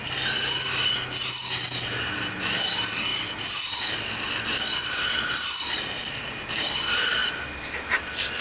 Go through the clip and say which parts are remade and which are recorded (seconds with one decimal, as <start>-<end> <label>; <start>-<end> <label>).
0.0-3.1 recorded; 3.1-5.3 remade; 5.3-8.4 recorded